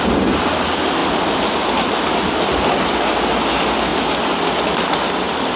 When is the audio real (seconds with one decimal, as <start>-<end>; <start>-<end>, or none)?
0.0-5.6